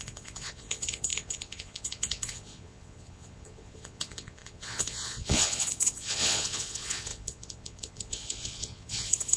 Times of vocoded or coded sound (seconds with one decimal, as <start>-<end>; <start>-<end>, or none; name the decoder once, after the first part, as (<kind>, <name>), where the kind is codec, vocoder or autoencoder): 0.0-9.4 (vocoder, Vocos)